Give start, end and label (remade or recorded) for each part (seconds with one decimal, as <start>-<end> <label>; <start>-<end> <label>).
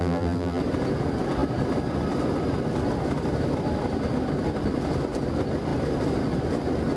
0.0-0.6 remade; 0.6-7.0 recorded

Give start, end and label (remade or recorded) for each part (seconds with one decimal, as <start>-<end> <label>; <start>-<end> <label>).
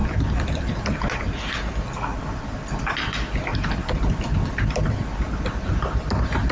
0.0-2.1 recorded; 2.1-2.8 remade; 2.8-3.5 recorded; 3.5-4.2 remade; 4.2-6.5 recorded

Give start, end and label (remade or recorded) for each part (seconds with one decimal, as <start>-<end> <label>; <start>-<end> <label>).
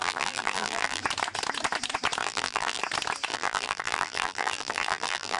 0.0-1.0 remade; 1.0-2.2 recorded; 2.2-2.8 remade; 2.8-3.3 recorded; 3.3-5.4 remade